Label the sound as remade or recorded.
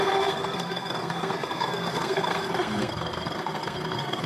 remade